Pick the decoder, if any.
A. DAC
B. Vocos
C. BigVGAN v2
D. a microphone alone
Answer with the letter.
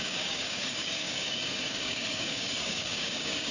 A